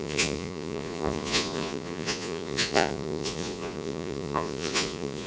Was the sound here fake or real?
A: fake